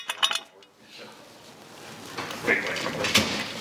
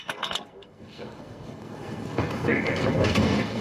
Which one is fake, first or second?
second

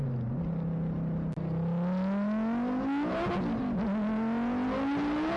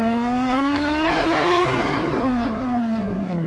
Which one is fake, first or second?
second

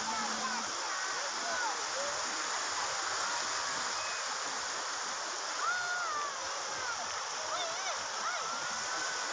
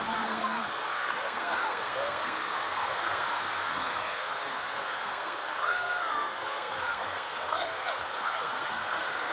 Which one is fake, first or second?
second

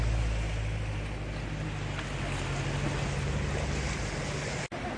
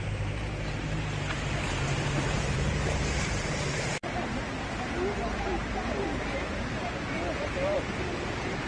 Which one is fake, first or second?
second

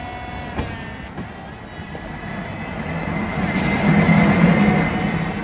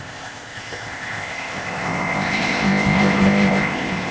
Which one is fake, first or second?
second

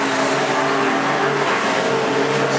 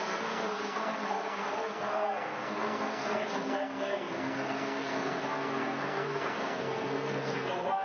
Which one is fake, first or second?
second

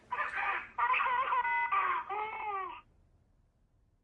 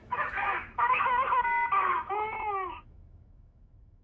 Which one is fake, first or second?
second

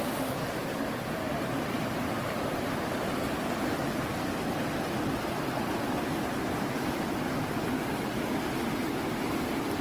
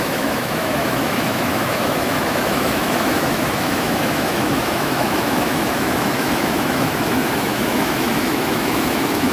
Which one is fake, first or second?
second